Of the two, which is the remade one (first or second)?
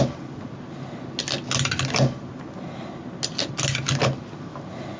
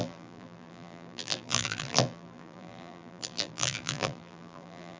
second